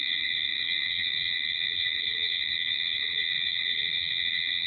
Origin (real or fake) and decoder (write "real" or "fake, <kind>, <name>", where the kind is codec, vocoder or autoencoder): fake, vocoder, WaveNeXt